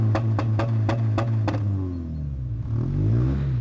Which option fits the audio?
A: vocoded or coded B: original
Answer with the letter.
B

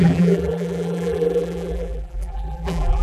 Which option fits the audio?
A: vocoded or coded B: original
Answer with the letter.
A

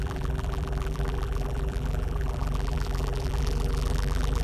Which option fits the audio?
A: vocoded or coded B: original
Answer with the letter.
A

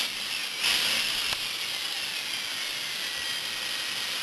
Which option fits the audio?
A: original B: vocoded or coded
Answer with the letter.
A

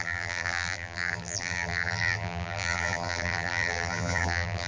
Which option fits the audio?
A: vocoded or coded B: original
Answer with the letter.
A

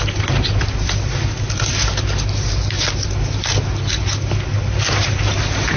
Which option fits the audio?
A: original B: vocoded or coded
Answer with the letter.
A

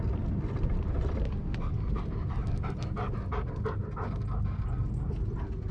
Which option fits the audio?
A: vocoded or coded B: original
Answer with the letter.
B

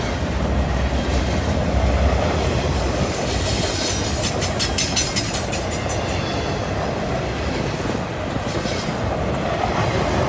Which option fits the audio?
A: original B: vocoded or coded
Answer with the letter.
A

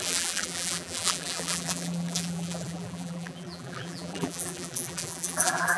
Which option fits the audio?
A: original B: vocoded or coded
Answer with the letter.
B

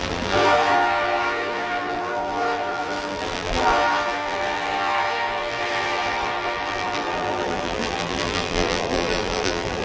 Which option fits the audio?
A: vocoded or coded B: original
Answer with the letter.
A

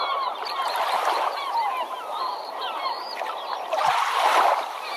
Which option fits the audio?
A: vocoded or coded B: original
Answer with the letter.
A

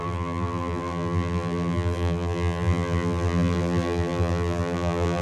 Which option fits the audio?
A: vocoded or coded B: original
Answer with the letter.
A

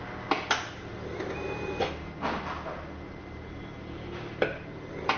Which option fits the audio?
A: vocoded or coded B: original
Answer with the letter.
B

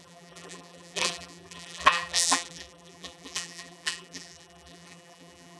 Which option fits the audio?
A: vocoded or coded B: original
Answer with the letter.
A